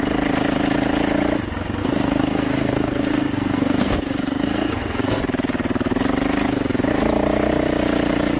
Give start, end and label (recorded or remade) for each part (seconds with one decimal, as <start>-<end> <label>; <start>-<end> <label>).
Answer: 0.0-1.8 recorded; 1.8-5.2 remade; 5.2-8.4 recorded